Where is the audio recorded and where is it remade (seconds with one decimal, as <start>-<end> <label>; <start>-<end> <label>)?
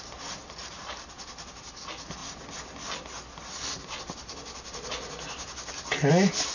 0.0-6.5 recorded